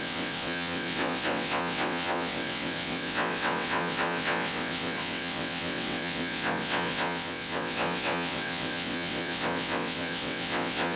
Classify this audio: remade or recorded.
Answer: remade